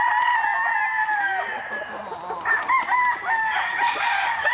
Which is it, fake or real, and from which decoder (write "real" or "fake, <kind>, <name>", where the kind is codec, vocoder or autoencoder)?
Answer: real